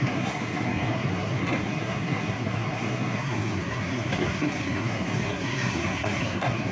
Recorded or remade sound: remade